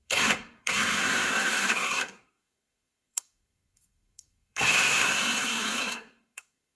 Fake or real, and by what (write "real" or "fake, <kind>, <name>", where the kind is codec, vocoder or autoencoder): fake, codec, SNAC